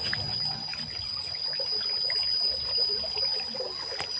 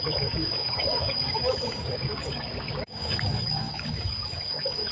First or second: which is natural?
first